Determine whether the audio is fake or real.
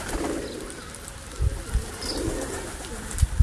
real